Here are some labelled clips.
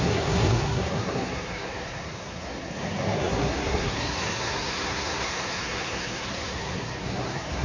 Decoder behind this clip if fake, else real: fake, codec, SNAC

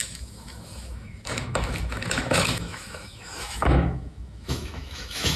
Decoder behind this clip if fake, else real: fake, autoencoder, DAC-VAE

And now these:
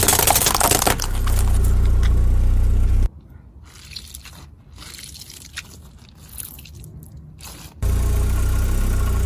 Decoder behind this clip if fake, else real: real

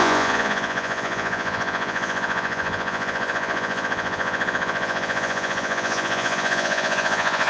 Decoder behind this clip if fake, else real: fake, vocoder, Vocos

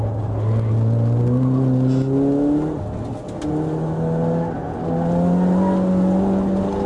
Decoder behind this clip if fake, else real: real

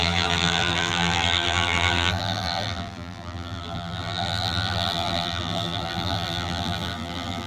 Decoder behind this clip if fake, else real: fake, vocoder, BigVGAN v2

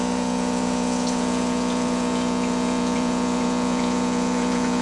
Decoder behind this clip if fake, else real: fake, vocoder, Vocos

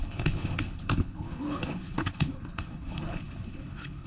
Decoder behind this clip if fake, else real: fake, codec, HILCodec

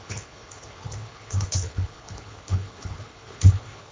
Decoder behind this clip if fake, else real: fake, codec, HILCodec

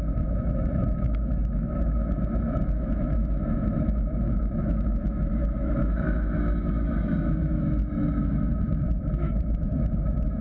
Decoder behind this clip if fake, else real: fake, autoencoder, DAC-VAE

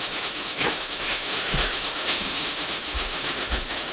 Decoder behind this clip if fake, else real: fake, autoencoder, DAC-VAE